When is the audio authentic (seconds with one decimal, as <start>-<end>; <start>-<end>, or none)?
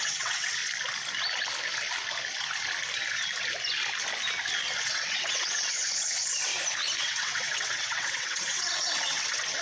0.6-4.8; 6.5-7.0